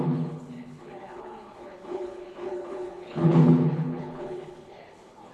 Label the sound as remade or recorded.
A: remade